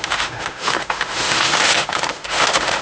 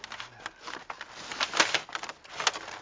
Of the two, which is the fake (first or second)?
first